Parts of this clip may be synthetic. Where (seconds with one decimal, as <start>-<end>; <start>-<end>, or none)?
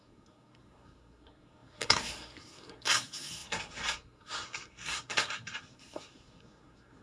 0.0-7.0